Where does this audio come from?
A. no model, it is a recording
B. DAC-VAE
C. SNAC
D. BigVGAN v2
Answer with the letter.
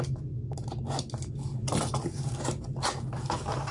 A